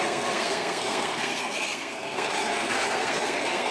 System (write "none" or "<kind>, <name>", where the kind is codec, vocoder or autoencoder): codec, SNAC